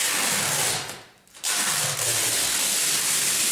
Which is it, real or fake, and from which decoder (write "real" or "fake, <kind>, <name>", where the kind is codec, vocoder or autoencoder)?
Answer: real